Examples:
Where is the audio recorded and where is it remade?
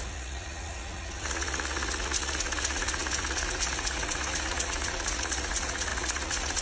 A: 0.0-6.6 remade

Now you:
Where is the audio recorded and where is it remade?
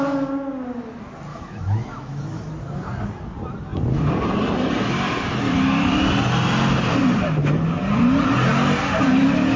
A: 0.0-1.3 recorded; 1.3-2.5 remade; 2.5-9.6 recorded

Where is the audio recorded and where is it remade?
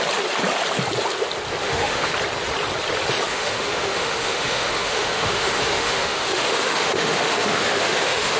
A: 0.0-1.6 recorded; 1.6-2.1 remade; 2.1-3.3 recorded; 3.3-8.4 remade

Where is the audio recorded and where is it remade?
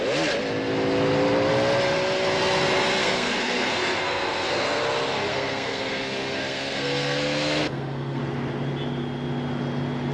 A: 0.0-3.0 recorded; 3.0-4.8 remade; 4.8-5.3 recorded; 5.3-8.2 remade; 8.2-10.1 recorded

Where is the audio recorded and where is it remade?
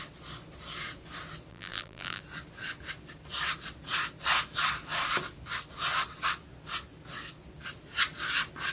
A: 0.0-1.5 recorded; 1.5-2.2 remade; 2.2-8.7 recorded